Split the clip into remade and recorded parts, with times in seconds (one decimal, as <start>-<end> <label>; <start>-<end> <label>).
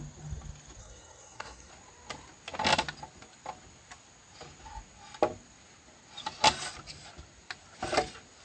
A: 0.0-0.8 recorded; 0.8-1.7 remade; 1.7-8.4 recorded